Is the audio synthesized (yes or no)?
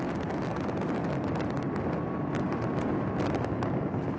no